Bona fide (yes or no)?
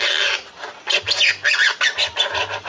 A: yes